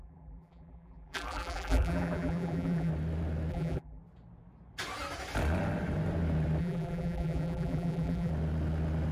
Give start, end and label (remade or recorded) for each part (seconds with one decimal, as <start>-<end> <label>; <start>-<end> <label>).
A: 0.0-2.9 remade; 2.9-3.5 recorded; 3.5-4.0 remade; 4.0-6.6 recorded; 6.6-8.3 remade; 8.3-9.1 recorded